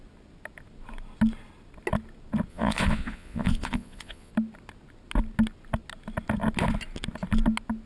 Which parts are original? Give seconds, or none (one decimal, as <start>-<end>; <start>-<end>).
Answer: 0.0-2.5; 4.3-7.9